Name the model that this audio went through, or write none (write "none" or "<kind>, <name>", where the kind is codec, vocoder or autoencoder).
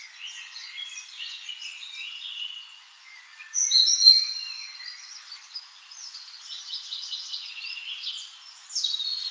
vocoder, Vocos